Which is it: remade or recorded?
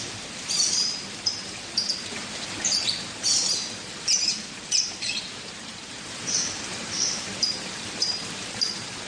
remade